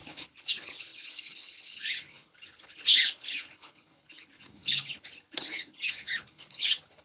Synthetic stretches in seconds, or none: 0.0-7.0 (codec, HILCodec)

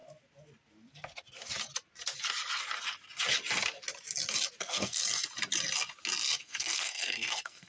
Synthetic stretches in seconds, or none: 4.6-5.0 (codec, SNAC); 6.4-7.7